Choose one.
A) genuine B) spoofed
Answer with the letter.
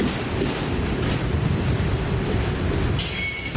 B